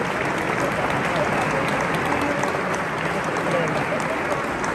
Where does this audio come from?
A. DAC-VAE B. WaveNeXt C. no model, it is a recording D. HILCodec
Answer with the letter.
C